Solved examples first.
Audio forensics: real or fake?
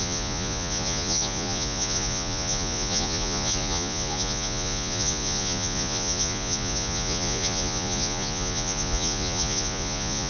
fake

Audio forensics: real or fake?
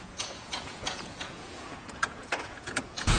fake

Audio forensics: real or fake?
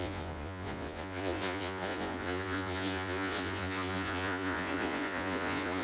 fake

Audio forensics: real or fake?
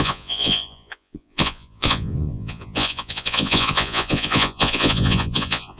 fake